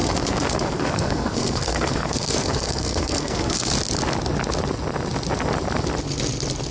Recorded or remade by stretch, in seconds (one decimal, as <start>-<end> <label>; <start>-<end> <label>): 0.0-3.7 remade; 3.7-6.7 recorded